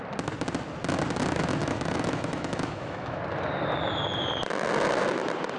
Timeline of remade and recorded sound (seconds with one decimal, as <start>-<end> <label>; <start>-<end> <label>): 0.0-1.6 recorded; 1.6-3.2 remade; 3.2-5.6 recorded